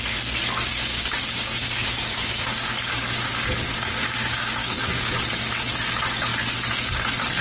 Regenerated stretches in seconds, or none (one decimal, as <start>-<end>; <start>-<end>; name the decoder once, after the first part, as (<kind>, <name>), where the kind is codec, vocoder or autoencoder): 0.7-5.1 (codec, DAC)